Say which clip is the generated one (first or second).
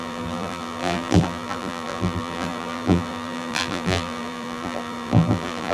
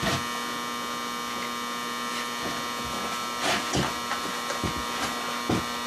first